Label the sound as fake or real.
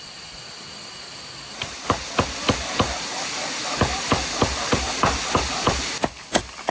real